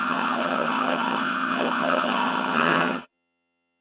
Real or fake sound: fake